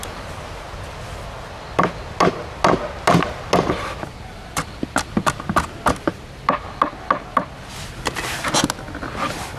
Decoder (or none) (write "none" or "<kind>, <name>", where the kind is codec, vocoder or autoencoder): none